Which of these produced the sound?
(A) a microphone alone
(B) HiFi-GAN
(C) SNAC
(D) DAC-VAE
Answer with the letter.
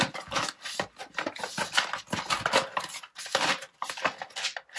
A